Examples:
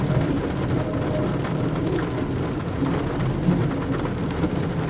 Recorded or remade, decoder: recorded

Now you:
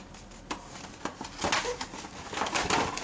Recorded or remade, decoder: recorded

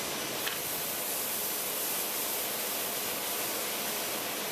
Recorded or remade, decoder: recorded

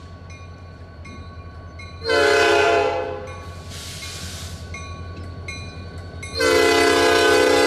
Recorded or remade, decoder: recorded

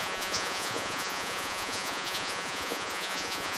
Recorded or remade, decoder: remade, vocoder, Vocos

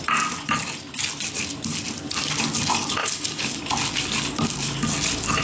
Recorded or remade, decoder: recorded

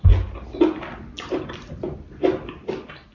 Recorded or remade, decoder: recorded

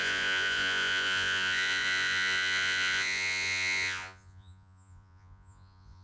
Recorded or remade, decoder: remade, vocoder, Vocos